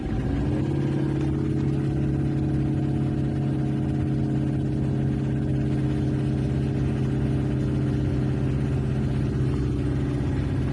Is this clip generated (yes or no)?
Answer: no